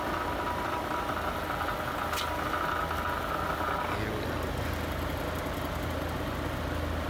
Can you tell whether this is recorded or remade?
recorded